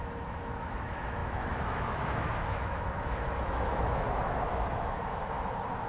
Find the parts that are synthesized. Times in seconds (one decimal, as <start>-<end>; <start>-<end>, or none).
0.0-5.2